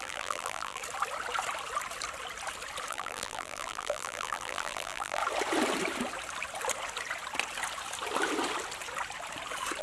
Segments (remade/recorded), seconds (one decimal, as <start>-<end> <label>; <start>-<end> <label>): 0.0-0.8 remade; 0.8-2.9 recorded; 2.9-5.2 remade; 5.2-9.8 recorded